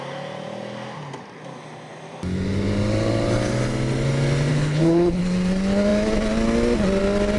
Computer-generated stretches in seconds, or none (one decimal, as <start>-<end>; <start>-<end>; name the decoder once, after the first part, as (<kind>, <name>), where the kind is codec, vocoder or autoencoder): 4.5-5.2 (codec, HILCodec)